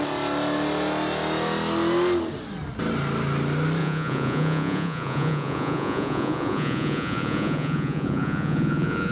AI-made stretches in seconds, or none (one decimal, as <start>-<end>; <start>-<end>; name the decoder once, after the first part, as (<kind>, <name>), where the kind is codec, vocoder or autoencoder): 3.8-9.1 (vocoder, Vocos)